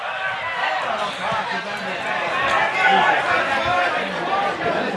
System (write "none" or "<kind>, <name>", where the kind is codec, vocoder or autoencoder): none